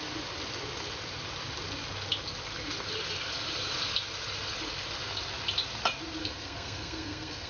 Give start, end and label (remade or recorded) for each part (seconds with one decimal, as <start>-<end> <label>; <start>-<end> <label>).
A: 0.0-6.2 recorded; 6.2-7.5 remade

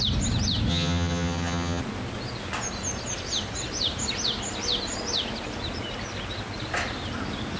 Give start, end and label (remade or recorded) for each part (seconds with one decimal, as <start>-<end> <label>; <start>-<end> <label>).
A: 0.0-0.7 recorded; 0.7-1.8 remade; 1.8-7.6 recorded